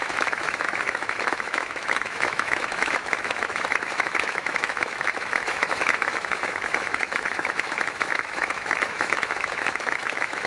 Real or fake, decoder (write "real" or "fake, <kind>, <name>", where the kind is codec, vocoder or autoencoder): fake, autoencoder, DAC-VAE